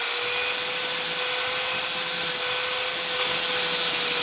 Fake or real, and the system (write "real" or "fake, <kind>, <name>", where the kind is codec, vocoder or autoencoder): real